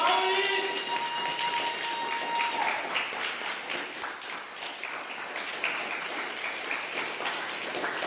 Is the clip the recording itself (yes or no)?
yes